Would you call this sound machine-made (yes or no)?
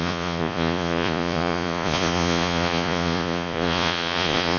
yes